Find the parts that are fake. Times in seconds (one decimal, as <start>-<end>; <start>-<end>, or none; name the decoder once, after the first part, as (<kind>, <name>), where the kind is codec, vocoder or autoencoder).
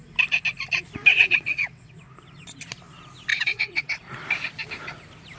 1.1-1.9 (vocoder, WaveNeXt); 3.3-4.0